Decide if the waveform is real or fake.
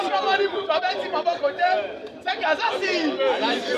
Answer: real